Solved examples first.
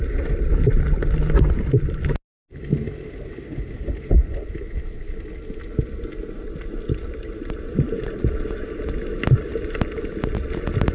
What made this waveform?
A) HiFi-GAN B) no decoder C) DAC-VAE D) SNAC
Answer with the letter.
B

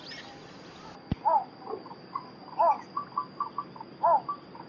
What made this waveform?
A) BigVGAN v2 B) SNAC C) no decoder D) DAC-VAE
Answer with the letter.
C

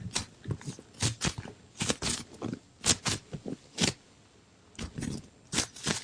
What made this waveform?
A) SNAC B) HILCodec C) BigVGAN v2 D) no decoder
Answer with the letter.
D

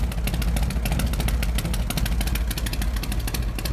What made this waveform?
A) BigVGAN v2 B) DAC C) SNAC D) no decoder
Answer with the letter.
D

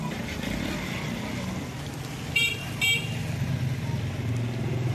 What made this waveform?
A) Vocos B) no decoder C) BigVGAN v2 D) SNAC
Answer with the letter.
B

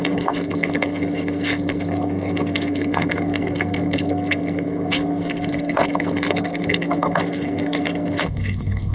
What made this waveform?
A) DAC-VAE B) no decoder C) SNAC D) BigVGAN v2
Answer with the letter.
C